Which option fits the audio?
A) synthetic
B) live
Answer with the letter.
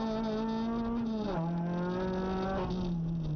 B